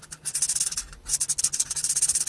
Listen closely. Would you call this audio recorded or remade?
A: recorded